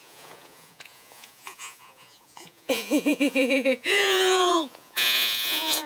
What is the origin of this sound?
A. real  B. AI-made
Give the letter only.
B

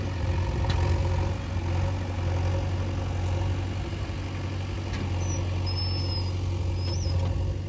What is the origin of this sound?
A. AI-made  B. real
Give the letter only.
B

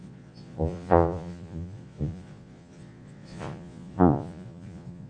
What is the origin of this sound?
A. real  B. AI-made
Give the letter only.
B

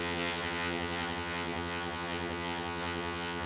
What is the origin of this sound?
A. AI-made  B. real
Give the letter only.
A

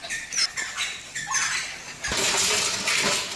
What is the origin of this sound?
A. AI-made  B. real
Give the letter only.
B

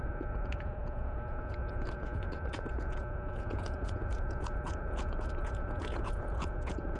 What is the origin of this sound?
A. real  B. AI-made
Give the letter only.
B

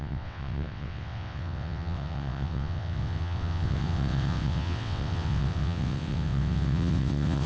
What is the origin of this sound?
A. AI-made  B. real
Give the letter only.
A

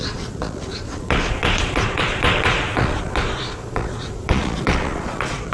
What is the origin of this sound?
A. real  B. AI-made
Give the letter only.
B